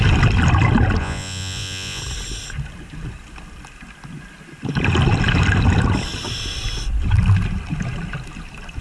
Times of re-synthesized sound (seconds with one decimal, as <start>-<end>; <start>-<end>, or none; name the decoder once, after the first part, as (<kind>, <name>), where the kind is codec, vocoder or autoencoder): 1.0-2.0 (vocoder, Vocos)